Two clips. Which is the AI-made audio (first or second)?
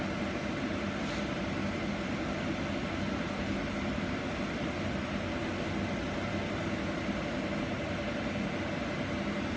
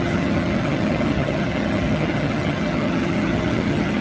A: second